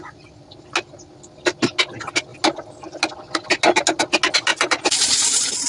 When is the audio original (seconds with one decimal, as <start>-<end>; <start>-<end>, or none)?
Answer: 0.0-4.5